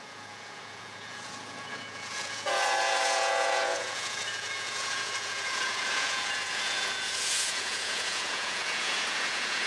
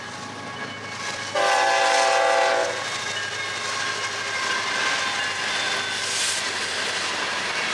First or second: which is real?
second